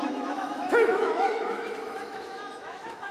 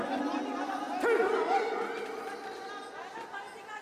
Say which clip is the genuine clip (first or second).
second